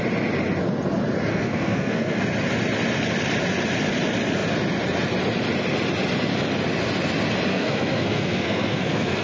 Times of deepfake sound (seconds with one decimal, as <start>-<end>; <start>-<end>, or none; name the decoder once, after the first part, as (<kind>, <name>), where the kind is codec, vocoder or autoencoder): 1.3-2.2 (codec, SNAC); 7.5-9.2